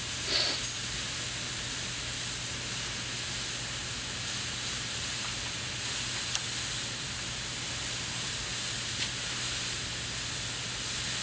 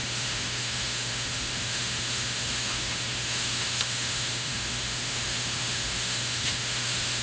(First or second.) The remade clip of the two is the second